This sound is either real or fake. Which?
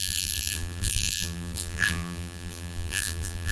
fake